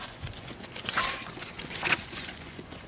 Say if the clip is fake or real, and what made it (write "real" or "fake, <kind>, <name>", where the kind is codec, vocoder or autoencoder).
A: fake, vocoder, Vocos